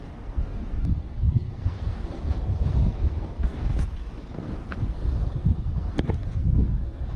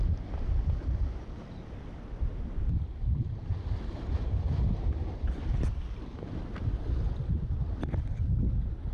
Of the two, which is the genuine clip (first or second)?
second